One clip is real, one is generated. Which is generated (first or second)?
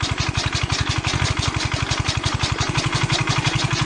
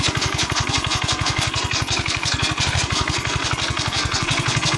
second